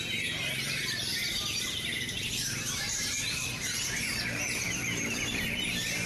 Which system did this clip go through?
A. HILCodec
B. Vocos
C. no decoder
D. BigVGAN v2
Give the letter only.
D